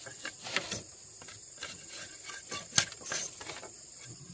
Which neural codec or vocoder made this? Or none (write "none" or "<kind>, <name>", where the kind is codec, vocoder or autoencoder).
none